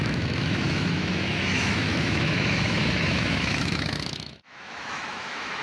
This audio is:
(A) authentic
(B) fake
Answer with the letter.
B